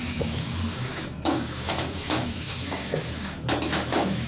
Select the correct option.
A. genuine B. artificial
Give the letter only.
B